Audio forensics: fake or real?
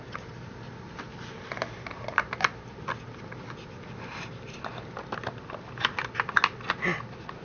real